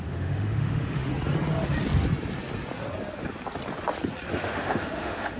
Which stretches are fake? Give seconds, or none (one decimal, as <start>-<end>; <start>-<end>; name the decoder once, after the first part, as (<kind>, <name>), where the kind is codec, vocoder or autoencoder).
0.0-1.1 (autoencoder, DAC-VAE); 4.3-5.4